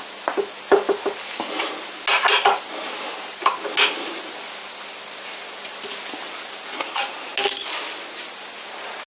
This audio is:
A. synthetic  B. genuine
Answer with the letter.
B